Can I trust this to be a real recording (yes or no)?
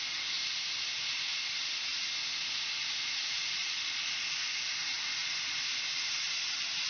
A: yes